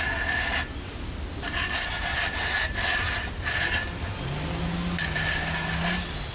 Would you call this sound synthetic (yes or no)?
no